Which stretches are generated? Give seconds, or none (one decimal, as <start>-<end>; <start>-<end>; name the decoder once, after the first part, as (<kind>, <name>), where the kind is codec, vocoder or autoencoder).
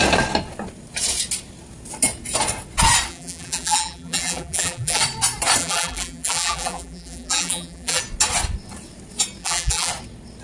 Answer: 3.1-5.0 (vocoder, BigVGAN v2); 5.6-8.0; 9.4-9.9